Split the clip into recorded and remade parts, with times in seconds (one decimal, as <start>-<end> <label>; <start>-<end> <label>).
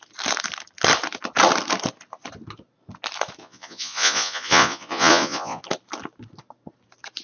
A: 0.0-3.4 recorded; 3.4-5.6 remade; 5.6-7.2 recorded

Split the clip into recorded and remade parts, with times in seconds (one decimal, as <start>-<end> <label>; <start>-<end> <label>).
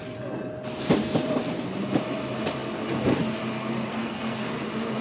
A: 0.0-3.9 recorded; 3.9-4.5 remade; 4.5-5.0 recorded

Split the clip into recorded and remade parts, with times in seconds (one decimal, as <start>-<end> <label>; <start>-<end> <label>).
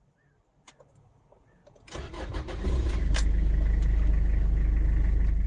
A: 0.0-5.5 recorded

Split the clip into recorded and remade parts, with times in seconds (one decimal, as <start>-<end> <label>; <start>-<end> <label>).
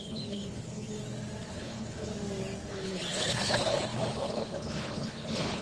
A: 0.0-1.0 remade; 1.0-1.5 recorded; 1.5-2.1 remade; 2.1-2.7 recorded; 2.7-5.6 remade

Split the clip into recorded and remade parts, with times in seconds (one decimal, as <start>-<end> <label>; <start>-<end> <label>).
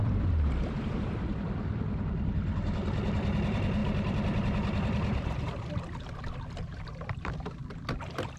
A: 0.0-8.4 remade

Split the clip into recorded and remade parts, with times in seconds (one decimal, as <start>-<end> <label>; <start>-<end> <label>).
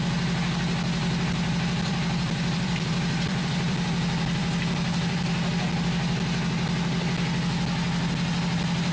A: 0.0-1.0 recorded; 1.0-5.8 remade; 5.8-8.9 recorded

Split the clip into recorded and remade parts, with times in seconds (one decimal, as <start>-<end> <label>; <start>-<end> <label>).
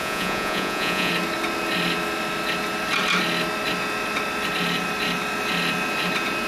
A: 0.0-1.1 remade; 1.1-6.5 recorded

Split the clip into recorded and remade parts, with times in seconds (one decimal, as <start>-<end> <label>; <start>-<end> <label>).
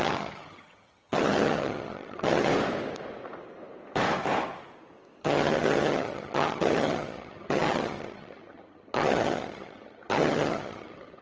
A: 0.0-2.5 remade; 2.5-5.2 recorded; 5.2-11.2 remade